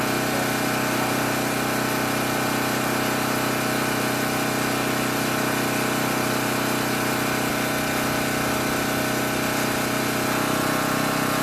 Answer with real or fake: real